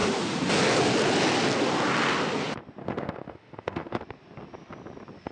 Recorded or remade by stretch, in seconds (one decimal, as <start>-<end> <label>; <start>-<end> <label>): 0.0-2.8 recorded; 2.8-4.0 remade; 4.0-5.3 recorded